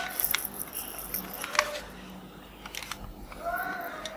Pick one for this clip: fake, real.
real